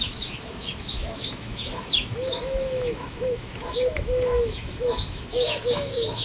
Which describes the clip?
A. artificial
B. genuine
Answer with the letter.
A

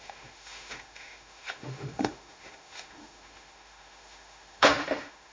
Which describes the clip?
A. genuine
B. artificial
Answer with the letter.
B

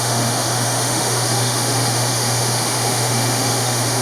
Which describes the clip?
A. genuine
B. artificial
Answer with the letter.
B